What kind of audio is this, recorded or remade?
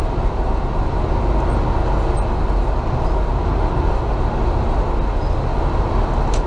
recorded